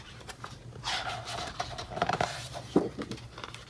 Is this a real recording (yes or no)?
no